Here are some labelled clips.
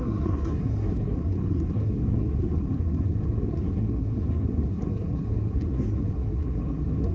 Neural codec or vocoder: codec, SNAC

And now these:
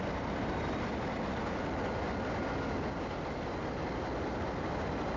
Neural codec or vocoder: none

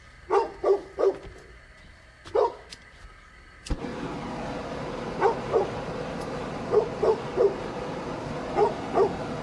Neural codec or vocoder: none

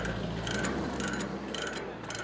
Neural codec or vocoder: none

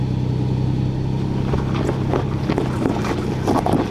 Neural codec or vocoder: none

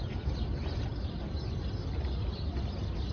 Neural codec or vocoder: none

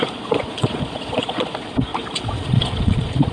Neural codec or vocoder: vocoder, Vocos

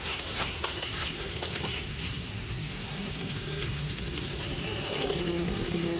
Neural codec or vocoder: codec, SNAC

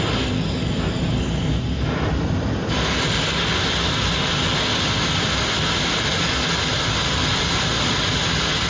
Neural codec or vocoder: none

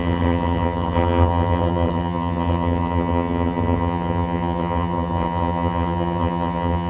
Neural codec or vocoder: vocoder, HiFi-GAN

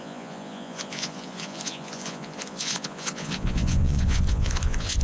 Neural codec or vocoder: vocoder, Vocos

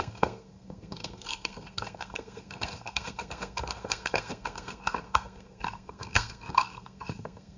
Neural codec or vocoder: codec, SNAC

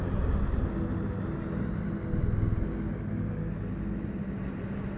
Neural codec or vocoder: none